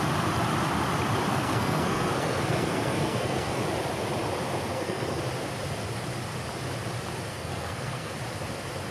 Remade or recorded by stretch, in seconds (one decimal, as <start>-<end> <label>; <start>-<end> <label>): 0.0-1.3 recorded; 1.3-3.6 remade; 3.6-4.7 recorded; 4.7-5.2 remade; 5.2-7.3 recorded; 7.3-8.1 remade; 8.1-8.9 recorded